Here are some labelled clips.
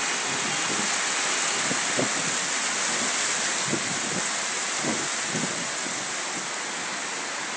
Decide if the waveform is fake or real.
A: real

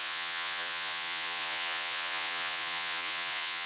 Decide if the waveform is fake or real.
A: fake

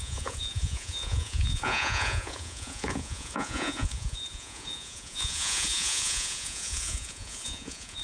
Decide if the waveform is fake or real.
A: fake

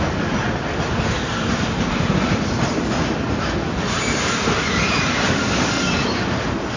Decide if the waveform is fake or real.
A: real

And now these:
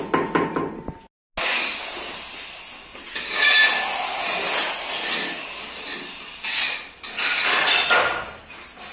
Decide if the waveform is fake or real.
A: real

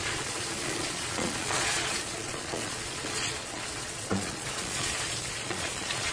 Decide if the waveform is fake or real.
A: fake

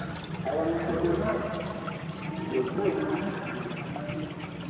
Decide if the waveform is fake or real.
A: real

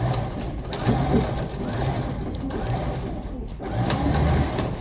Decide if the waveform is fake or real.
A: real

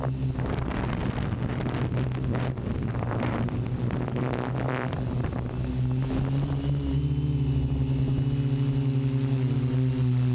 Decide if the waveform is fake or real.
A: real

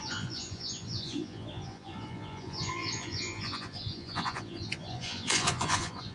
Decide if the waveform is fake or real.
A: fake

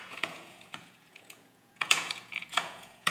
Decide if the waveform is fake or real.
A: fake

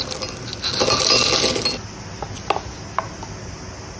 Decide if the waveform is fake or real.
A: real